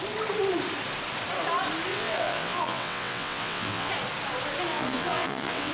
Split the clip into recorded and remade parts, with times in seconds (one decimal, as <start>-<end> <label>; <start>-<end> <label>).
0.0-1.9 recorded; 1.9-3.9 remade; 3.9-4.7 recorded; 4.7-5.7 remade